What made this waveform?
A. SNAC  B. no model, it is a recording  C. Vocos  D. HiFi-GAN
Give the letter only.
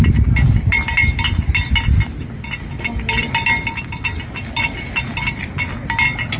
B